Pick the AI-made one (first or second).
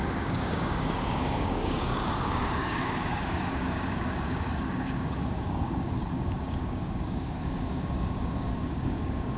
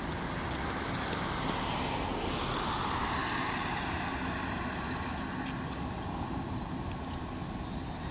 first